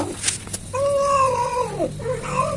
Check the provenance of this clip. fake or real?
real